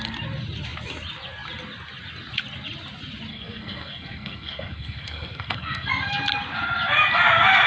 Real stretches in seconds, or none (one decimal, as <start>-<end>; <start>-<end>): 0.0-3.3; 5.9-7.7